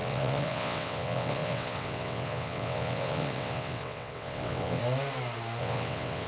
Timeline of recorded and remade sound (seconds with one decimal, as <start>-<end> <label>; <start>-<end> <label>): 0.0-4.8 remade; 4.8-5.6 recorded; 5.6-6.3 remade